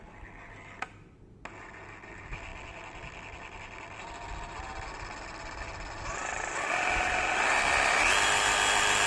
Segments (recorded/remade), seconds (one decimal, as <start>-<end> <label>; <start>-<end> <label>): 0.0-9.1 recorded